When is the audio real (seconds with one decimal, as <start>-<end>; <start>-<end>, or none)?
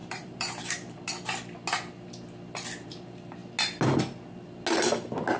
1.0-5.4